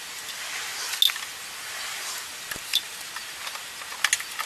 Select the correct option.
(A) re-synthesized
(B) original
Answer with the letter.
B